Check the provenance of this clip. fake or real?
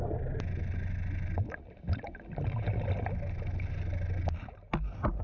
real